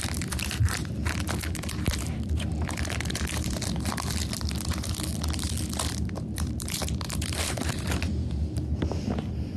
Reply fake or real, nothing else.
fake